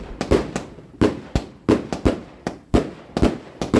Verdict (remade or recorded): recorded